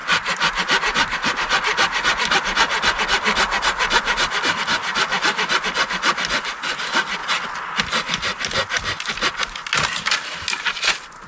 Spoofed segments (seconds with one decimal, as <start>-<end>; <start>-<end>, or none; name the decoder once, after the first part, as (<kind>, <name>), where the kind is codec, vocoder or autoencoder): 9.9-10.7 (vocoder, BigVGAN v2)